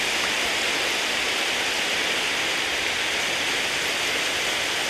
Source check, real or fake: real